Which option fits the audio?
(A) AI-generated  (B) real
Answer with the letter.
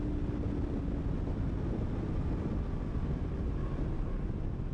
B